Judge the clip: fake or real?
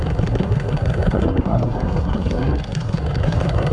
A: fake